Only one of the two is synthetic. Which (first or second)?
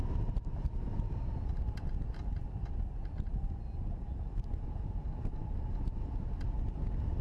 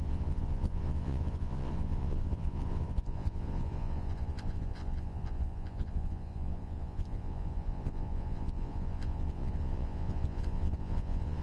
second